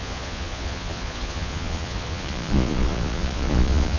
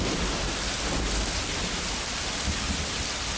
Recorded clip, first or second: second